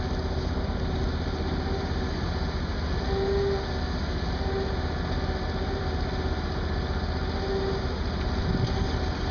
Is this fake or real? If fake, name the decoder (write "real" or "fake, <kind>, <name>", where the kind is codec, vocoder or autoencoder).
real